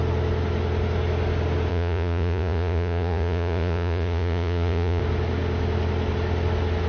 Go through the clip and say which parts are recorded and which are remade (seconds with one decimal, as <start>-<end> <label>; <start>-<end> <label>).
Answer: 0.0-1.7 recorded; 1.7-5.0 remade; 5.0-6.9 recorded